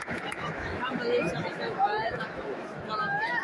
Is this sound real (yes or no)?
no